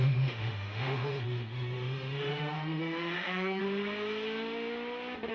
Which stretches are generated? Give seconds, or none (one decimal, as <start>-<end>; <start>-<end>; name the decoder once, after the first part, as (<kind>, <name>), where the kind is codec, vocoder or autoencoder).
0.0-3.6 (autoencoder, DAC-VAE)